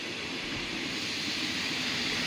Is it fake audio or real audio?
fake